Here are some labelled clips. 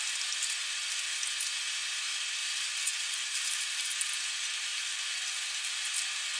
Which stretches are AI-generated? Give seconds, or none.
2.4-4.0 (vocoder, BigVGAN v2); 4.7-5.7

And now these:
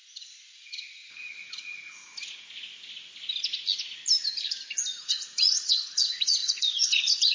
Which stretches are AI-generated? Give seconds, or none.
0.0-2.1 (vocoder, Vocos); 5.0-7.3

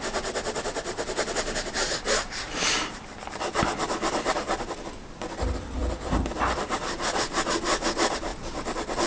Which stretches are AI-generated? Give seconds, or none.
none

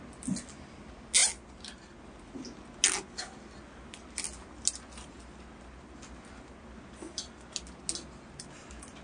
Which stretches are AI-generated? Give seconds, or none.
none

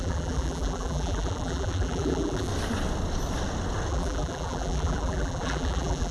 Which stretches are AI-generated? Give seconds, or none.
0.0-2.5 (vocoder, BigVGAN v2); 3.9-6.1

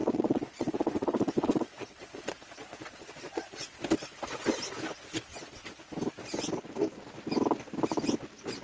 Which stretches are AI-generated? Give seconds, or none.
0.0-3.6 (vocoder, Vocos); 5.3-5.8